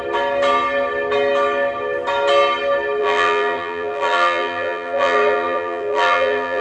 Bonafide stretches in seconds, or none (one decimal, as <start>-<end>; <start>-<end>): 0.0-3.0